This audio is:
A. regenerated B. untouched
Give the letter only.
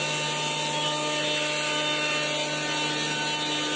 B